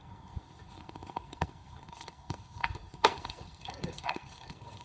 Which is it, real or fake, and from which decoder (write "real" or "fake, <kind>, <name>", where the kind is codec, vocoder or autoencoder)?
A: fake, codec, SNAC